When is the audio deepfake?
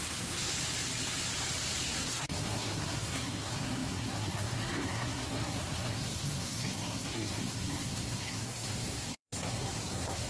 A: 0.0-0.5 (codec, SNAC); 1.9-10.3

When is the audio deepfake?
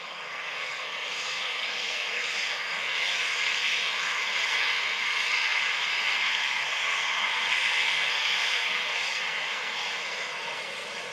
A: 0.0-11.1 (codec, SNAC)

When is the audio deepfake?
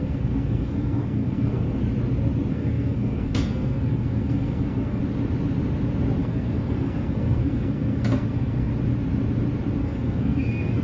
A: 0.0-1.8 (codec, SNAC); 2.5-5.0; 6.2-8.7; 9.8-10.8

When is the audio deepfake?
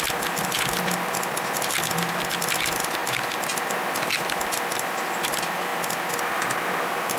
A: none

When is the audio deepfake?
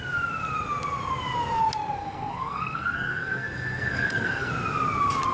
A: 2.0-4.5 (codec, SNAC)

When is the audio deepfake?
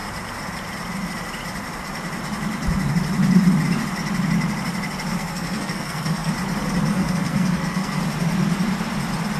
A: 5.1-6.3 (codec, SNAC); 6.9-8.0